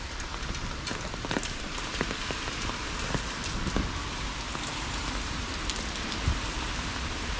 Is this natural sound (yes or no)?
yes